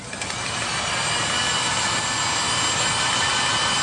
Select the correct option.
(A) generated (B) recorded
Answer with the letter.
B